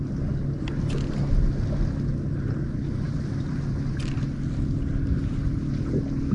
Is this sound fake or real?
real